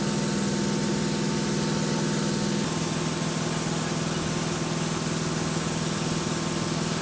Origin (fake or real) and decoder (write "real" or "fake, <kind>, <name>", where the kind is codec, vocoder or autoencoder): real